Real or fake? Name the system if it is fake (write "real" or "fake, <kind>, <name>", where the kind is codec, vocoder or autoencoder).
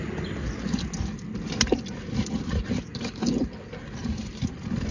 real